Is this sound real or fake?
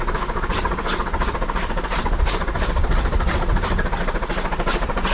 real